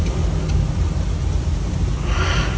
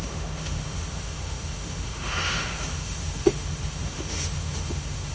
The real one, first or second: first